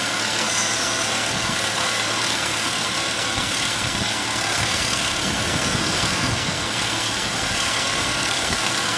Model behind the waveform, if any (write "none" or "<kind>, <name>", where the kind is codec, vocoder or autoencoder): codec, SNAC